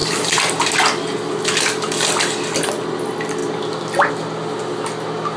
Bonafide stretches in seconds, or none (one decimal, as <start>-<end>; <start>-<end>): 0.0-5.4